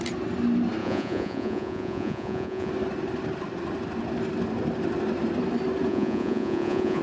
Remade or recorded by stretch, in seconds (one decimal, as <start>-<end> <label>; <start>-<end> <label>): 0.0-0.8 recorded; 0.8-2.7 remade; 2.7-5.9 recorded; 5.9-7.0 remade